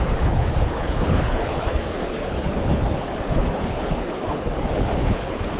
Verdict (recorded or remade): remade